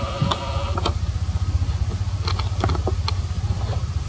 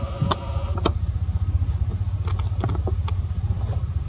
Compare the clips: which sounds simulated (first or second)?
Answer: second